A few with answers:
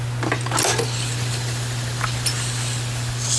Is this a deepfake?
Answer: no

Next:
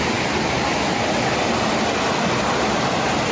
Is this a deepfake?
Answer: no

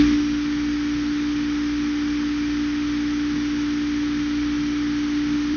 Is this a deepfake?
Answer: no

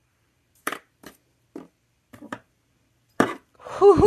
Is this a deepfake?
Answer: yes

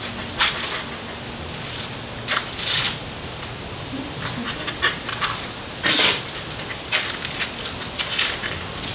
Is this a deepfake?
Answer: no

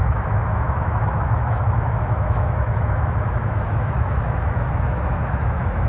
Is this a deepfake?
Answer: yes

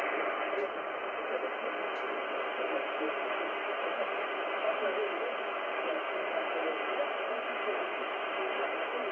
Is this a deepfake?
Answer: no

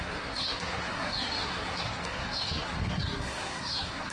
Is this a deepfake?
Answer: yes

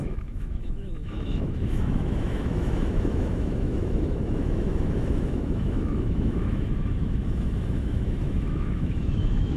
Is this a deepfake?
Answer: yes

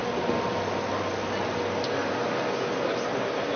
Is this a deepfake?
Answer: no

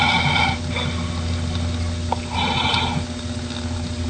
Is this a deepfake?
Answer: no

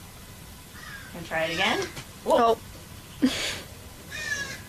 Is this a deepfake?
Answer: no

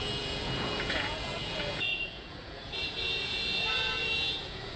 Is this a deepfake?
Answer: yes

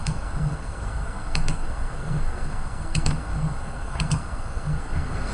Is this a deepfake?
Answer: yes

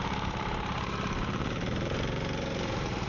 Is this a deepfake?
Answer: yes